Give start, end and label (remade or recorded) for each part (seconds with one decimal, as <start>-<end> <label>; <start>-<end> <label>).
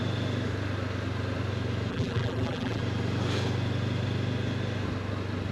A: 0.0-1.9 recorded; 1.9-2.8 remade; 2.8-5.5 recorded